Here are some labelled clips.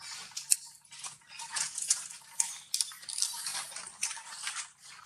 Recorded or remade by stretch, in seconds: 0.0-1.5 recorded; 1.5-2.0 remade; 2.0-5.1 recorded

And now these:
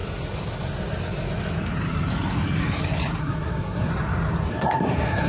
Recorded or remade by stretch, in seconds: 0.0-3.2 recorded; 3.2-3.9 remade; 3.9-4.5 recorded; 4.5-5.3 remade

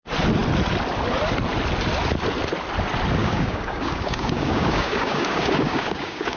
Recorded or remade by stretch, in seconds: 0.0-3.2 recorded; 3.2-6.4 remade